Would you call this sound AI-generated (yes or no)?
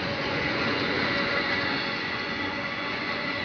yes